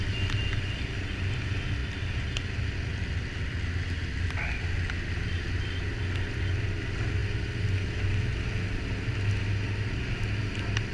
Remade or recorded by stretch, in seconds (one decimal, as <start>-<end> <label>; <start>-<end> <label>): 0.0-10.9 recorded

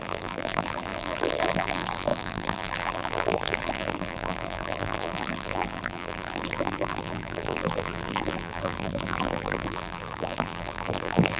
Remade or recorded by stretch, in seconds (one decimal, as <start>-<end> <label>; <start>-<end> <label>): 0.0-11.4 remade